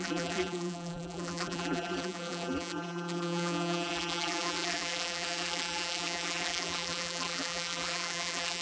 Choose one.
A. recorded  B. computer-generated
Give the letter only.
B